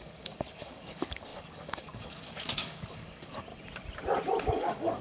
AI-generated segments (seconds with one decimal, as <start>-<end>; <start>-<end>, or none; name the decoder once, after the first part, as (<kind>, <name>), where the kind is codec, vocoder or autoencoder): 0.0-3.5 (codec, DAC); 4.4-5.0